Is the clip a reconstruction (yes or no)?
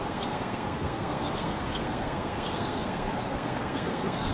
yes